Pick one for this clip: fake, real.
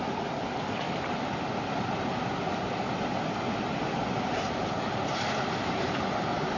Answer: real